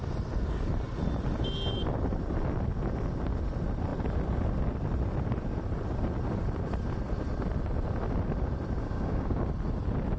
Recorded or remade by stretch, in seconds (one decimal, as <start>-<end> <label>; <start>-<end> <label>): 0.0-8.8 recorded; 8.8-9.4 remade; 9.4-10.2 recorded